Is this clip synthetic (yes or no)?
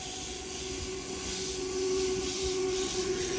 yes